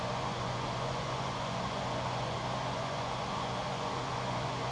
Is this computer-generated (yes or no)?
yes